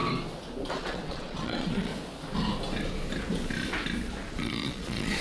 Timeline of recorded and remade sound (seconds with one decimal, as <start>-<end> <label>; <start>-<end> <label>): 0.0-0.7 recorded; 0.7-1.9 remade; 1.9-4.3 recorded; 4.3-5.2 remade